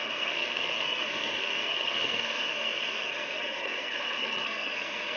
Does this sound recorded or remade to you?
remade